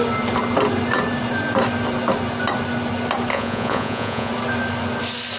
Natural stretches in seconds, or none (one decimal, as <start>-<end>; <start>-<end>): 0.0-3.3; 4.3-5.4

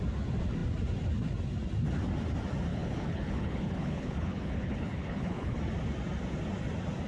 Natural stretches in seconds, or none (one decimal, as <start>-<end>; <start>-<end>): 0.0-2.7; 5.6-7.1

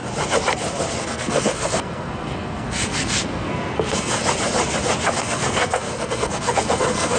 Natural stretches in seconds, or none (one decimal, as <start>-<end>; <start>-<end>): 0.0-1.0; 4.2-5.2